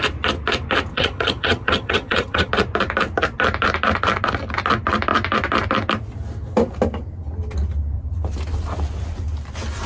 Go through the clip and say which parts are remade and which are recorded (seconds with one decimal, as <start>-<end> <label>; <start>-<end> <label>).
0.0-0.9 recorded; 0.9-2.5 remade; 2.5-9.9 recorded